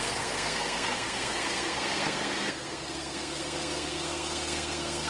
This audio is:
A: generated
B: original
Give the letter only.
A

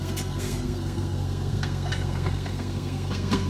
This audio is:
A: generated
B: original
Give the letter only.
A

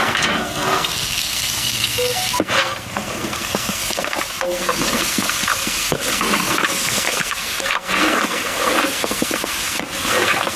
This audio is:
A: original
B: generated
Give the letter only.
B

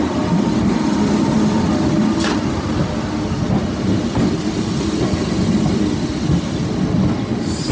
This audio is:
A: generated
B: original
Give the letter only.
B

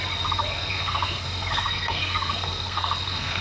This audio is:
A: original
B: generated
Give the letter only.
B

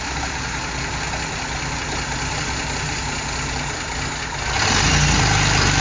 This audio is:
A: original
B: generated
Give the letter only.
A